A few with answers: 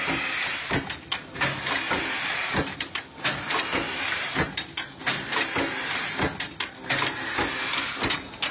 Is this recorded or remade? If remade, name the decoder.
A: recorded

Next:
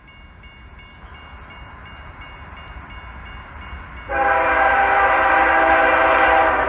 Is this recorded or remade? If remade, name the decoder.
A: recorded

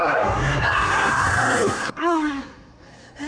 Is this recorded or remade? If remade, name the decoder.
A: remade, codec, SNAC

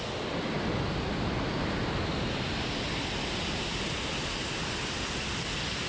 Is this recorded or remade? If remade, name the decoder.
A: recorded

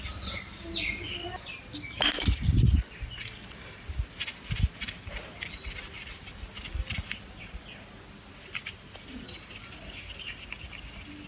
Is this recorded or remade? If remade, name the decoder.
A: recorded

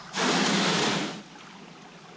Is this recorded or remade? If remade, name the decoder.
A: recorded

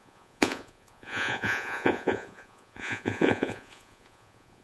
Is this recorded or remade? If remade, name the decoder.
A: remade, vocoder, Vocos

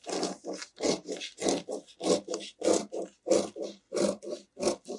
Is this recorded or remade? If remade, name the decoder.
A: remade, vocoder, BigVGAN v2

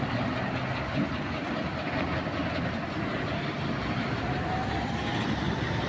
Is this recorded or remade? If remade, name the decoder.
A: recorded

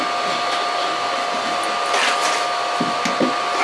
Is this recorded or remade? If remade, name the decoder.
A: recorded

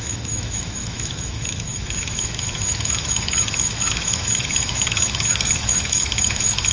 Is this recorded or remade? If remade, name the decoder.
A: remade, autoencoder, DAC-VAE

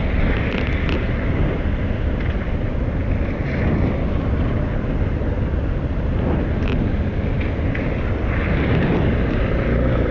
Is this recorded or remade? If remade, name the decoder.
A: recorded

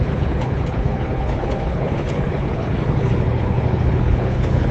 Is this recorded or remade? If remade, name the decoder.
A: remade, codec, HILCodec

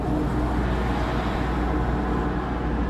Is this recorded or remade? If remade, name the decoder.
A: recorded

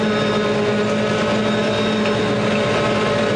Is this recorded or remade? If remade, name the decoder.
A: recorded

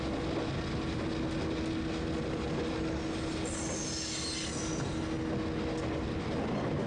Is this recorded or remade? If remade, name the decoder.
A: recorded